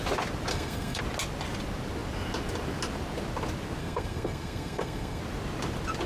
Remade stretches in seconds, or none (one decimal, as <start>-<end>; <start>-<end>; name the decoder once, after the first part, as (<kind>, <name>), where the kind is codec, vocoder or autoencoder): 0.5-1.0 (codec, SNAC); 3.8-5.2